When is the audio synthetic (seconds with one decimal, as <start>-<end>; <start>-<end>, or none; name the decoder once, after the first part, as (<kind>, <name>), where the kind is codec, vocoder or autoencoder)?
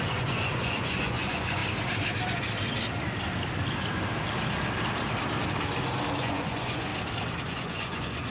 0.0-1.6 (vocoder, Vocos); 6.2-6.9; 7.4-8.3